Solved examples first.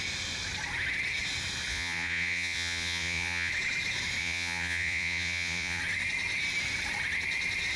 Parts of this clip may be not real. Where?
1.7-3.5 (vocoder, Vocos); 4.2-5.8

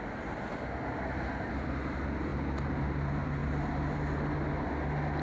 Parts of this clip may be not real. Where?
none

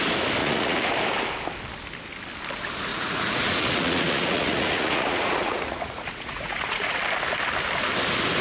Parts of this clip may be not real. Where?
0.4-0.9 (vocoder, Vocos); 2.9-7.0

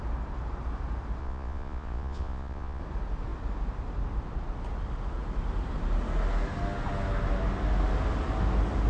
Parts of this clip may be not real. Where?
1.2-2.8 (vocoder, Vocos)